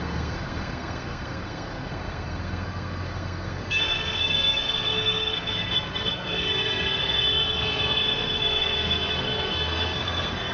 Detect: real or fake fake